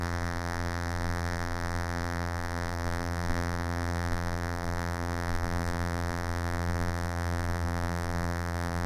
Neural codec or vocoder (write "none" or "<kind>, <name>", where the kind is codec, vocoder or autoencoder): vocoder, BigVGAN v2